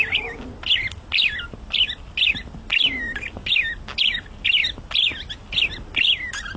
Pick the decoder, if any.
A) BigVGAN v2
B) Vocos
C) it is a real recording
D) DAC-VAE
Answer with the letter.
C